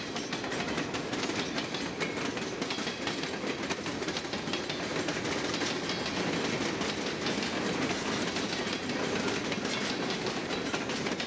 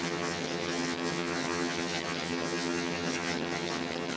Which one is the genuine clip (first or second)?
first